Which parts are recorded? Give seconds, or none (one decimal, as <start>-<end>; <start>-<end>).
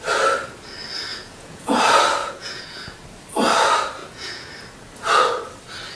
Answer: 0.0-1.1; 1.8-2.2; 2.9-4.0; 4.5-5.9